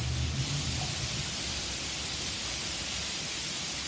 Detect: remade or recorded recorded